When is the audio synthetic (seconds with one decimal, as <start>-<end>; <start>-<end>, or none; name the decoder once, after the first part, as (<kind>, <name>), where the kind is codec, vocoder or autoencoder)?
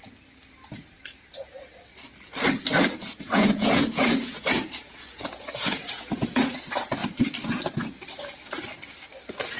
3.0-6.5 (vocoder, Vocos)